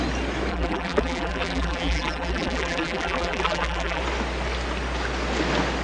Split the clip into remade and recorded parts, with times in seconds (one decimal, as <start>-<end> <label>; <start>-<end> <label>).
0.0-0.5 recorded; 0.5-4.0 remade; 4.0-5.8 recorded